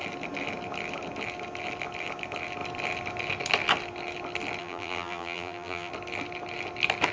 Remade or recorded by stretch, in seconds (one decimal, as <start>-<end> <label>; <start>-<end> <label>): 0.0-4.6 recorded; 4.6-5.9 remade; 5.9-7.1 recorded